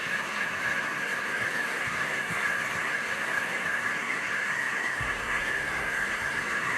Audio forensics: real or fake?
fake